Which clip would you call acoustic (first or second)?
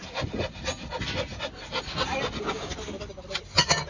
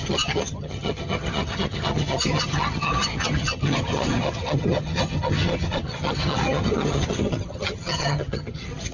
first